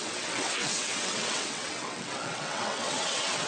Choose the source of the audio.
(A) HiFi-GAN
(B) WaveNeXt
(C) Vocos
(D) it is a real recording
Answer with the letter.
B